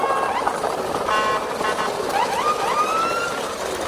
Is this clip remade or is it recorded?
recorded